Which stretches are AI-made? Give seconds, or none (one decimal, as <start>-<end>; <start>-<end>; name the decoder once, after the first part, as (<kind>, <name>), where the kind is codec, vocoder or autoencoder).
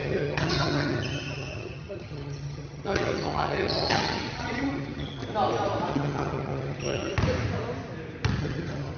0.0-5.2 (vocoder, HiFi-GAN); 5.9-7.1; 8.4-9.0